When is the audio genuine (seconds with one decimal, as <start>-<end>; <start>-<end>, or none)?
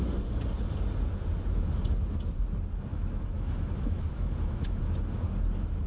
0.0-2.9; 4.8-5.9